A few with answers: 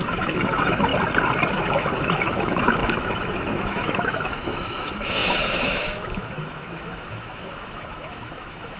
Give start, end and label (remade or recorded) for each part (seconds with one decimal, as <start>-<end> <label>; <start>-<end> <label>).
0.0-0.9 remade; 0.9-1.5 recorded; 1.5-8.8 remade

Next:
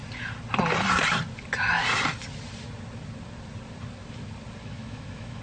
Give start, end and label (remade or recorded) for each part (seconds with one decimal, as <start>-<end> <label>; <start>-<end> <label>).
0.0-4.6 recorded; 4.6-5.4 remade

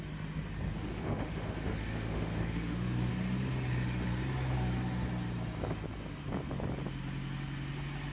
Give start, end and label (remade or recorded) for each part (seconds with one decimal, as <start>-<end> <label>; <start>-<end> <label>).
0.0-0.7 recorded; 0.7-3.1 remade; 3.1-8.1 recorded